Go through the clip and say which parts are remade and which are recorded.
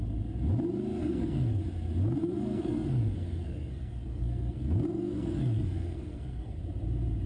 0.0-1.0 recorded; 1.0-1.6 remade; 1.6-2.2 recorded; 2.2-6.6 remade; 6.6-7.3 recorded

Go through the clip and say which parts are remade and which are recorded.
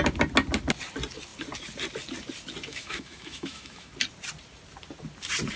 0.0-2.7 recorded; 2.7-3.9 remade; 3.9-5.6 recorded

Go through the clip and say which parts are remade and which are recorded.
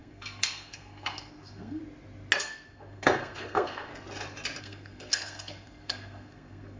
0.0-1.8 remade; 1.8-2.4 recorded; 2.4-3.9 remade; 3.9-4.6 recorded; 4.6-6.8 remade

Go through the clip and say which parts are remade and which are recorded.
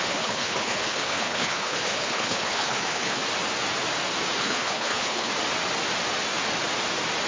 0.0-3.2 remade; 3.2-4.4 recorded; 4.4-5.3 remade; 5.3-7.3 recorded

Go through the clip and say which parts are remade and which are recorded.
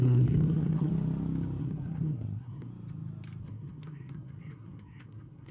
0.0-0.9 remade; 0.9-1.6 recorded; 1.6-2.7 remade; 2.7-3.4 recorded; 3.4-5.5 remade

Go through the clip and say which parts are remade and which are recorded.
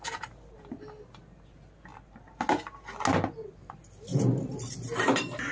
0.0-5.5 recorded